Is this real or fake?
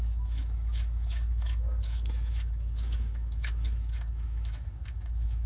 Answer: fake